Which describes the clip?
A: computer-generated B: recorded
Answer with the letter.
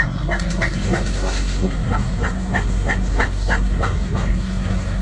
A